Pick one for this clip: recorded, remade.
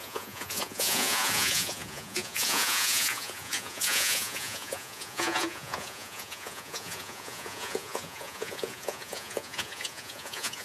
remade